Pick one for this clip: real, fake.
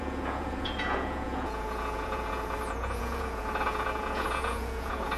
fake